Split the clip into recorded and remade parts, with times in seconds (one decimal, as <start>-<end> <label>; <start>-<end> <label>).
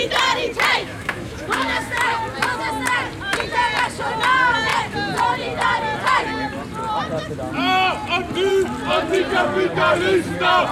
0.0-0.8 recorded; 0.8-2.2 remade; 2.2-10.7 recorded